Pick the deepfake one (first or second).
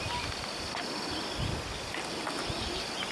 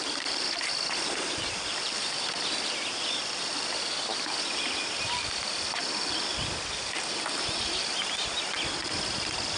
second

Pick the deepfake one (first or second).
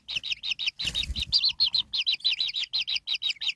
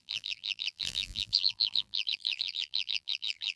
second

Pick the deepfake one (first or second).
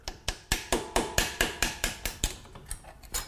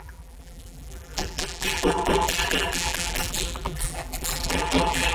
second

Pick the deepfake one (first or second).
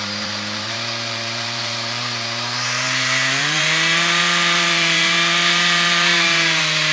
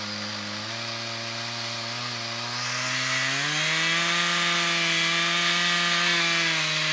first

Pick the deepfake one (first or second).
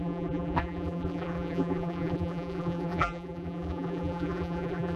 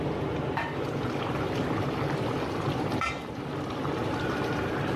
first